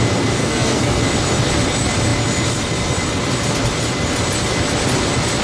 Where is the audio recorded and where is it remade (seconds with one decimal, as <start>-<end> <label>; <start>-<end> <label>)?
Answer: 0.0-0.4 recorded; 0.4-1.0 remade; 1.0-5.4 recorded